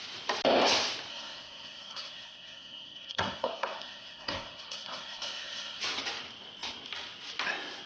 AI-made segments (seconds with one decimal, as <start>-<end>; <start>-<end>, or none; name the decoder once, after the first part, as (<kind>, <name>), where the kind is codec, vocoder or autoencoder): 1.1-5.8 (codec, SNAC)